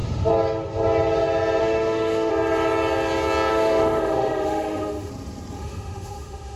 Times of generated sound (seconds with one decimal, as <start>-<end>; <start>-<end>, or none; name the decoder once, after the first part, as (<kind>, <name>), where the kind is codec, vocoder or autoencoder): 1.6-2.3 (autoencoder, DAC-VAE); 3.5-5.1; 5.6-6.6

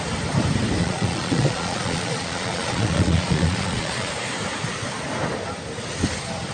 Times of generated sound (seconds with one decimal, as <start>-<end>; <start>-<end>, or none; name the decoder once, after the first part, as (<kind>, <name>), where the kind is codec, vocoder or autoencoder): 0.8-4.1 (vocoder, Vocos)

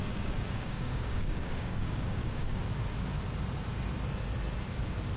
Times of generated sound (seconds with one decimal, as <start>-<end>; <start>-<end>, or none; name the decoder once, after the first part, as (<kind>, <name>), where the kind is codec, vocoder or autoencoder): 0.0-2.6 (codec, DAC)

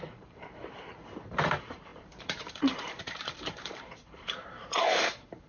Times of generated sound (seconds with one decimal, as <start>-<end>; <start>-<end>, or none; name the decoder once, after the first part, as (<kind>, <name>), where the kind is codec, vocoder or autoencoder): 0.0-5.5 (vocoder, BigVGAN v2)

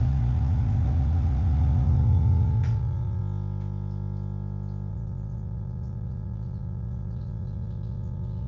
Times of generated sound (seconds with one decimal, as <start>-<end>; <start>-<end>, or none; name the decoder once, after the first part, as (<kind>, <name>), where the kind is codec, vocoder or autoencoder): 0.0-3.2 (vocoder, Vocos); 4.9-8.5

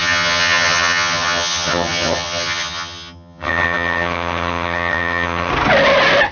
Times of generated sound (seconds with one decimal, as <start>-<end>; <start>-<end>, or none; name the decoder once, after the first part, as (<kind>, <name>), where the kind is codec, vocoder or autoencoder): 0.0-5.5 (vocoder, HiFi-GAN)

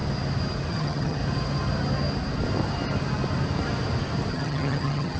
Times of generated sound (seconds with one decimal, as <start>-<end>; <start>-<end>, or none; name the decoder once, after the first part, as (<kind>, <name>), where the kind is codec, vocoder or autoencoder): 0.7-1.2 (vocoder, HiFi-GAN); 4.3-5.2

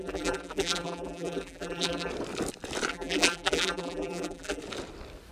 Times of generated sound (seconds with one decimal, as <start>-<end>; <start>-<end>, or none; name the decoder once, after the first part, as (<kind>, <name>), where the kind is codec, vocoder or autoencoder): 0.0-2.1 (vocoder, BigVGAN v2); 2.9-4.6